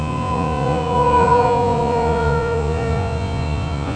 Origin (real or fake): fake